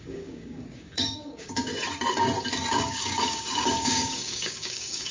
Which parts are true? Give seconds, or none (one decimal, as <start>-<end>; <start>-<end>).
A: 1.7-2.7